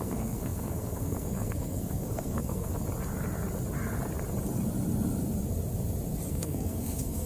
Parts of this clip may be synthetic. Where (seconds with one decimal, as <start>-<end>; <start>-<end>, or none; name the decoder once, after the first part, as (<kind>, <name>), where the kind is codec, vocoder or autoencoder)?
0.0-2.7 (codec, SNAC); 6.3-7.3